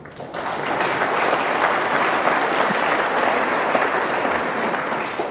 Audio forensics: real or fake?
real